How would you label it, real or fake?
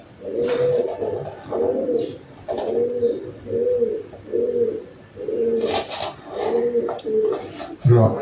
real